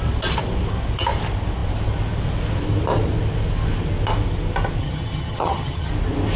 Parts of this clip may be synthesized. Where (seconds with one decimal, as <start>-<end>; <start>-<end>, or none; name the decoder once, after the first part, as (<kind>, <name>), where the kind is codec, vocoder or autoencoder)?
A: 4.8-5.9 (vocoder, HiFi-GAN)